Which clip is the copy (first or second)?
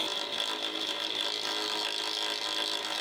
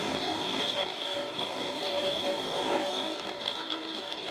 second